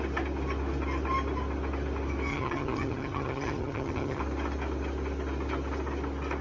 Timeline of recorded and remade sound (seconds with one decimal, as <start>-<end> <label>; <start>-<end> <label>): 0.0-2.3 recorded; 2.3-4.2 remade; 4.2-6.4 recorded